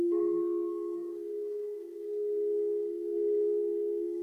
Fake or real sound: fake